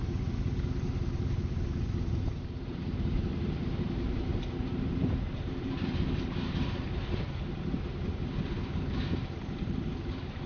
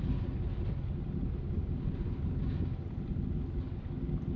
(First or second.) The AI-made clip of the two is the first